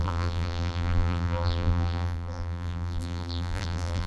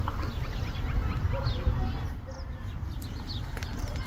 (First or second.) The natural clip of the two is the second